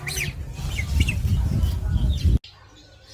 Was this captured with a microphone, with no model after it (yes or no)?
yes